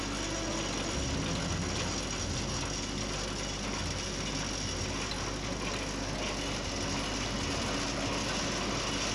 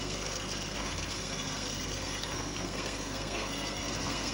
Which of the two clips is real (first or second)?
first